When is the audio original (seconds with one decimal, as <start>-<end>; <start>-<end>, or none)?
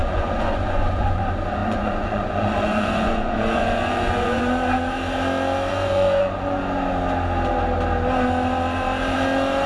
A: 1.2-1.6; 4.4-5.7; 6.6-9.7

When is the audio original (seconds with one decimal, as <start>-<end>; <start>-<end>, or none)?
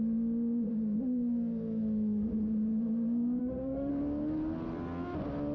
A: 0.0-3.4; 3.9-5.5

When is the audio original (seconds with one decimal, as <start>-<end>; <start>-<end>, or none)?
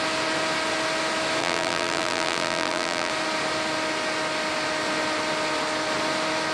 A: 0.0-1.4; 3.1-6.5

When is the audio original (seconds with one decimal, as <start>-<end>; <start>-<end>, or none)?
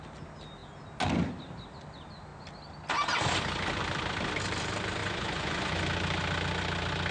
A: 0.0-5.0; 5.8-7.1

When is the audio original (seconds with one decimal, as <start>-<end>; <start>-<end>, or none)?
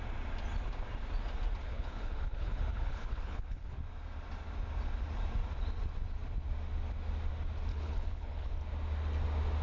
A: 0.0-1.6; 3.8-7.7; 8.5-9.6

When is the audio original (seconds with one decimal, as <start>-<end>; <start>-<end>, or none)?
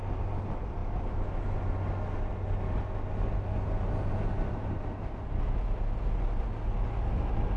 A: 0.0-7.6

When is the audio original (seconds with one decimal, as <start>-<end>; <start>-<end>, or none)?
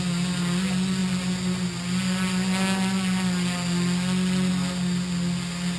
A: 0.0-5.8